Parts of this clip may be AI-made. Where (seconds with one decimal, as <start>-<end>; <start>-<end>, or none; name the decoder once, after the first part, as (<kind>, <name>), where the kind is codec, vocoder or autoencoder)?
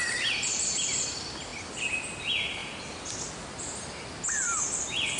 none